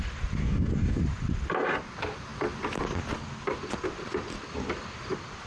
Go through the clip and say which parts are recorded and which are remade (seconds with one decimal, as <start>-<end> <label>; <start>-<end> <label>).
0.0-0.4 recorded; 0.4-1.0 remade; 1.0-5.5 recorded